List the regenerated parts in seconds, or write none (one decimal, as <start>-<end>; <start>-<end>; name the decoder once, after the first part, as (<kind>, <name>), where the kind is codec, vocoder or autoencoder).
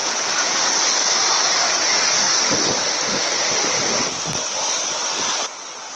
0.0-0.6 (vocoder, Vocos)